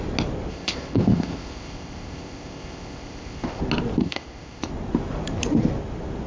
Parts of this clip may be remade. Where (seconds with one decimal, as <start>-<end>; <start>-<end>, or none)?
0.5-3.6; 4.0-4.7

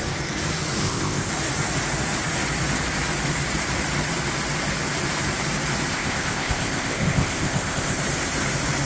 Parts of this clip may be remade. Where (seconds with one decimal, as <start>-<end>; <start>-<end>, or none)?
0.8-1.3; 5.9-8.0

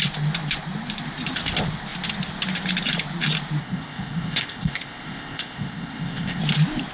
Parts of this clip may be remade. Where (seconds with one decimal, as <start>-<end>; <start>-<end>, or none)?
3.6-6.4

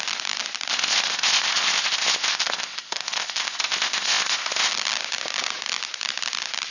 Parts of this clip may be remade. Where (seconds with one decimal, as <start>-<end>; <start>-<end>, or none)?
0.7-4.7

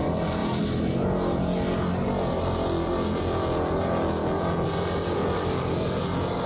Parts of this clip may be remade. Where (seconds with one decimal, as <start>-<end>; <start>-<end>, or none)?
none

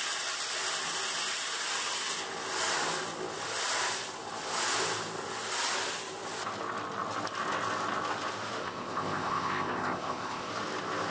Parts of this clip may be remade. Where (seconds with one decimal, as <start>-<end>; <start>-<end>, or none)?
8.6-10.5

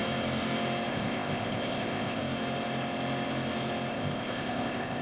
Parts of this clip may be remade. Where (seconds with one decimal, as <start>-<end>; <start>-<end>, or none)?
0.9-2.2; 3.9-5.0